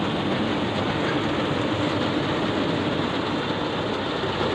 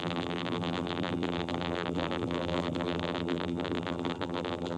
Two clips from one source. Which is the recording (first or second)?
first